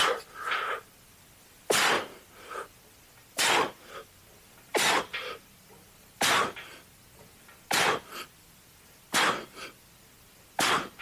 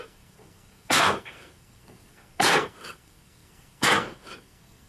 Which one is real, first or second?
first